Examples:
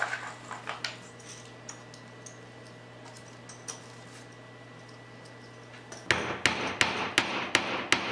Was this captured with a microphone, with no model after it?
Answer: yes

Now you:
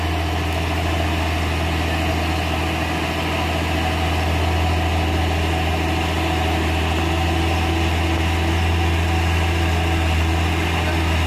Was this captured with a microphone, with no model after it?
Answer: yes